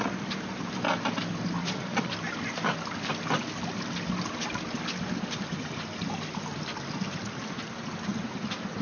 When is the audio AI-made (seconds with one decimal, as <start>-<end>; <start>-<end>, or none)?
1.6-2.1